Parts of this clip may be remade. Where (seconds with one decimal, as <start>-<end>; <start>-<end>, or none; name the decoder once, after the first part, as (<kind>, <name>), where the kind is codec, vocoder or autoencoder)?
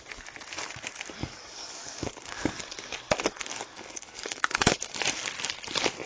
1.2-4.9 (codec, DAC)